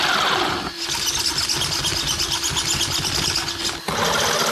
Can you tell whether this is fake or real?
real